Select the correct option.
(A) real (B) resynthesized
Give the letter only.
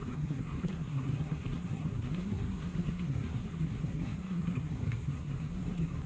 B